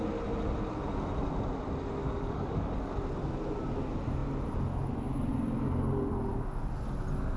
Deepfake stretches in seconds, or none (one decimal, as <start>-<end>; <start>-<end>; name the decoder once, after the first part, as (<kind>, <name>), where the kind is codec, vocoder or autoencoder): 2.0-2.9 (codec, DAC)